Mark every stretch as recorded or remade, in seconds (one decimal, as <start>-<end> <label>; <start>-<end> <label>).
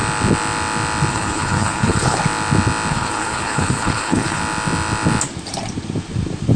0.0-1.1 recorded; 1.1-2.2 remade; 2.2-2.9 recorded; 2.9-4.4 remade; 4.4-6.6 recorded